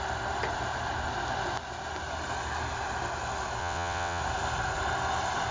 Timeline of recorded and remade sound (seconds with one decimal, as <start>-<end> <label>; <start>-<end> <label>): 0.0-3.6 recorded; 3.6-4.2 remade; 4.2-5.5 recorded